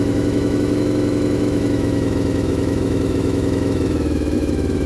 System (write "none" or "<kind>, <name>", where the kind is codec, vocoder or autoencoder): autoencoder, DAC-VAE